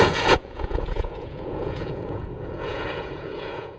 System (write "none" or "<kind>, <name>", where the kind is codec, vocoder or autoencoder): vocoder, Vocos